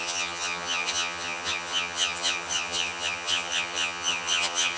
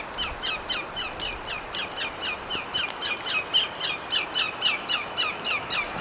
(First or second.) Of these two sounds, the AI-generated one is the first